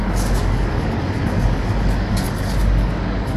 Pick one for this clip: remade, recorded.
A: remade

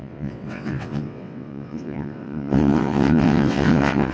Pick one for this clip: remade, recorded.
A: remade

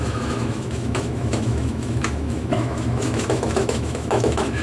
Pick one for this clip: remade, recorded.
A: remade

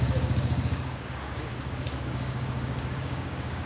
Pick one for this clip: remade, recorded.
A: remade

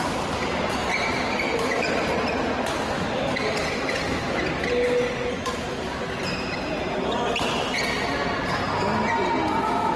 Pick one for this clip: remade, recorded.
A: recorded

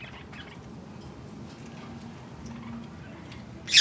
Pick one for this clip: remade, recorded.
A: recorded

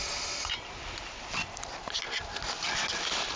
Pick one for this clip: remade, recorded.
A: recorded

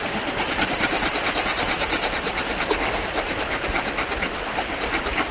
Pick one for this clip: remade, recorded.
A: recorded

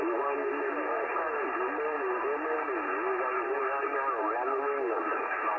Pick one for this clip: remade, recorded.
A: recorded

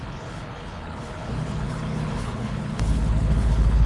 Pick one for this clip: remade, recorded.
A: remade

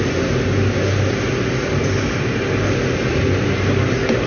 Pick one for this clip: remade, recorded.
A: recorded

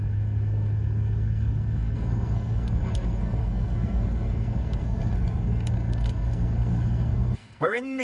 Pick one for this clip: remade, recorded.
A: remade